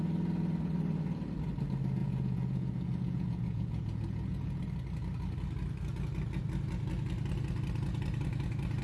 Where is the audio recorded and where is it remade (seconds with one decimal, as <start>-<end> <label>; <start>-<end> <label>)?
0.0-2.0 recorded; 2.0-4.6 remade; 4.6-8.8 recorded